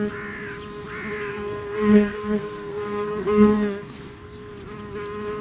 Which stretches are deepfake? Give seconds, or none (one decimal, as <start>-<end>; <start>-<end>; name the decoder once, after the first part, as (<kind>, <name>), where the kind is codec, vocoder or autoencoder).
1.3-4.5 (codec, SNAC)